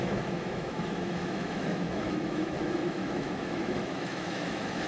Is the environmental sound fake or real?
fake